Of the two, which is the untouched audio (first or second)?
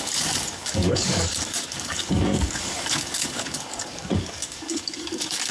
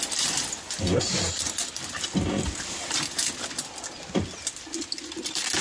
second